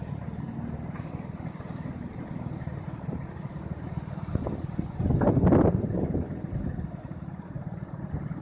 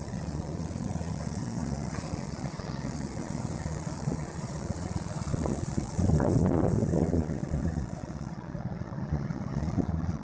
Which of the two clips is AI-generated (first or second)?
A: second